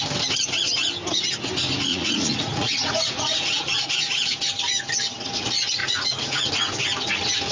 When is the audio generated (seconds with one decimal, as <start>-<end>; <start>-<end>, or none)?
1.9-4.4; 5.8-6.5